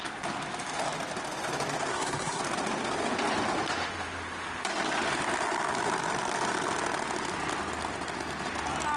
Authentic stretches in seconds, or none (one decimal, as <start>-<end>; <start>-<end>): 0.0-1.9; 2.4-9.0